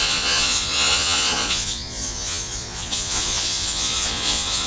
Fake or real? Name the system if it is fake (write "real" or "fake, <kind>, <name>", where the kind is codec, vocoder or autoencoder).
fake, vocoder, Vocos